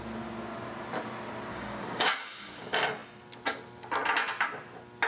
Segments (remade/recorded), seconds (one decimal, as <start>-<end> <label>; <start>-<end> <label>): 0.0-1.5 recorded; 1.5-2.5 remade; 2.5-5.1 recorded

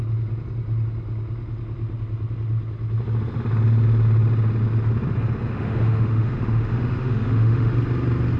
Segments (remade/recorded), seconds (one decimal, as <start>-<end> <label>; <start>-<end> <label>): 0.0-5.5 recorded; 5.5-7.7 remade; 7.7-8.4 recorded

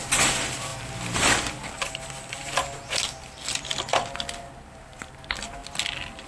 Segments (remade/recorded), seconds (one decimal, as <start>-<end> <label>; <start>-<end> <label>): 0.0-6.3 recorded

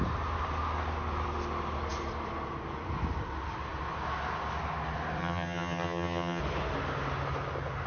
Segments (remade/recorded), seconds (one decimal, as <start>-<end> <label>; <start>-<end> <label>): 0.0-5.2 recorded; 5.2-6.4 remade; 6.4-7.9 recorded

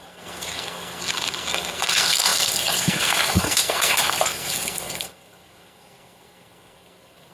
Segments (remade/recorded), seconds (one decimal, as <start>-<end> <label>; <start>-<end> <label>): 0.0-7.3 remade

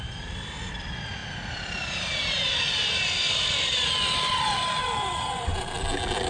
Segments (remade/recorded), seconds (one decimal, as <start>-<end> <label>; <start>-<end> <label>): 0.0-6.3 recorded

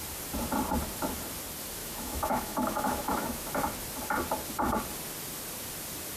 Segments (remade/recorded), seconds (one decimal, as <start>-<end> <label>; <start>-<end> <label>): 0.0-1.8 recorded; 1.8-3.5 remade; 3.5-6.2 recorded